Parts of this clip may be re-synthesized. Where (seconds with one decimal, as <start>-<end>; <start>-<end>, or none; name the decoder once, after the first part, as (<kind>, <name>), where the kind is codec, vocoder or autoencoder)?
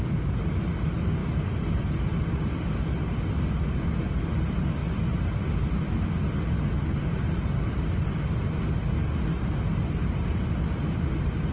none